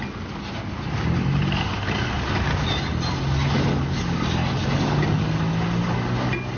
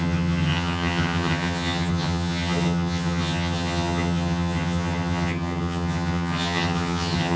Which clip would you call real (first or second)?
first